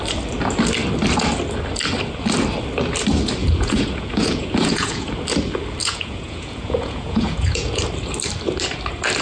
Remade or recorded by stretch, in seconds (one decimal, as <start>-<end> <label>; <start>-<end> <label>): 0.0-3.4 recorded; 3.4-5.1 remade; 5.1-5.8 recorded; 5.8-7.8 remade; 7.8-9.2 recorded